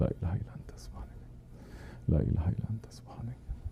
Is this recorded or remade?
recorded